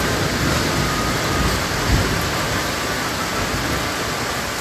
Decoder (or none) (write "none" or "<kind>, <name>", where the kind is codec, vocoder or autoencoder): none